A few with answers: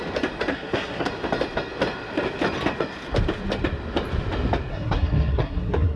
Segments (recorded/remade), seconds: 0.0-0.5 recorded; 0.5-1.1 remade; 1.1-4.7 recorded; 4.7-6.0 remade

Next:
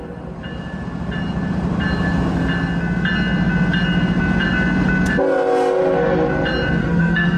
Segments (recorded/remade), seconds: 0.0-6.8 recorded; 6.8-7.4 remade

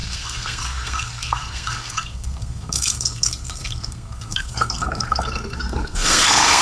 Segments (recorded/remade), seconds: 0.0-6.6 remade

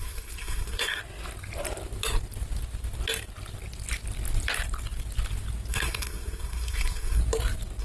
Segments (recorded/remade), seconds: 0.0-1.0 remade; 1.0-5.7 recorded; 5.7-7.2 remade; 7.2-7.8 recorded

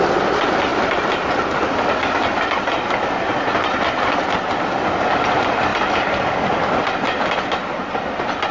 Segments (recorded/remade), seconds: 0.0-8.5 recorded